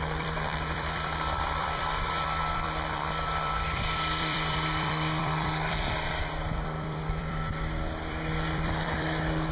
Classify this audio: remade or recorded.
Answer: remade